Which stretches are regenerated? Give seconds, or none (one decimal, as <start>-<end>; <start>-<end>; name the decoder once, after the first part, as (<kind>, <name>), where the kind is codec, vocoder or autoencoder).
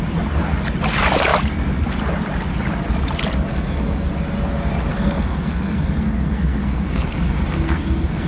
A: 3.5-4.1 (codec, SNAC); 4.9-8.3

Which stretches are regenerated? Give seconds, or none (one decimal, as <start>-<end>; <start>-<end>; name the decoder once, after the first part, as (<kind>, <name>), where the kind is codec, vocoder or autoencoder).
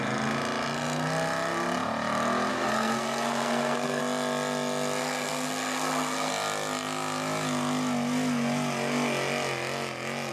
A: 2.5-4.0 (codec, SNAC); 5.0-6.3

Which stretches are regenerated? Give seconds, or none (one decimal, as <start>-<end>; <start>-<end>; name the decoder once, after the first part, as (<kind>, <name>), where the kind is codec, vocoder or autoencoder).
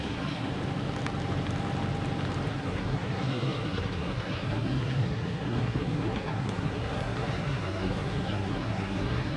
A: 0.0-0.5 (codec, SNAC); 2.5-9.4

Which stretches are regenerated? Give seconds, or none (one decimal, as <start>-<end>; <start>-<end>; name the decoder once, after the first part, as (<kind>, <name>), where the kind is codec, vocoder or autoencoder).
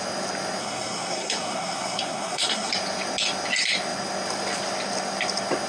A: 0.6-2.7 (codec, SNAC)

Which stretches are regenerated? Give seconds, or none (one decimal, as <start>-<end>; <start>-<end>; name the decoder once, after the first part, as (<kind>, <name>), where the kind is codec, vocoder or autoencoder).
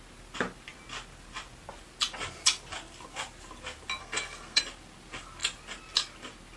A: 4.0-4.6 (codec, SNAC)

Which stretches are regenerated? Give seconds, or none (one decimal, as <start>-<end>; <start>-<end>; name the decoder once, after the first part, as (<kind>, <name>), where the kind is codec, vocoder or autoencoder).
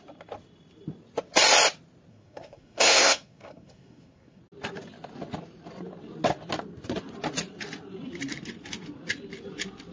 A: 2.1-4.4 (codec, SNAC)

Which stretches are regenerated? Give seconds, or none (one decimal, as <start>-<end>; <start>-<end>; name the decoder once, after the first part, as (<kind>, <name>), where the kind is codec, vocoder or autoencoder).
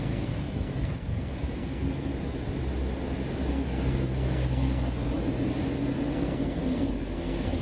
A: 0.0-2.1 (codec, SNAC); 3.5-5.1; 6.1-7.6